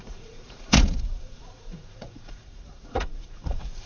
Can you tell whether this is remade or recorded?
remade